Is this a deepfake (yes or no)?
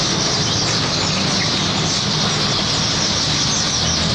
no